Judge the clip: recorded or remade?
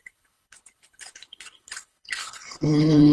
remade